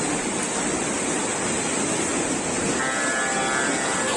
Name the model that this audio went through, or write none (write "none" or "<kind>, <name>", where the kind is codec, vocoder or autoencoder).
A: none